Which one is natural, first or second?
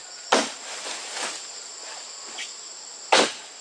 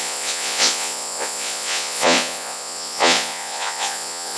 first